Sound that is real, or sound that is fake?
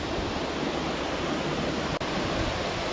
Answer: real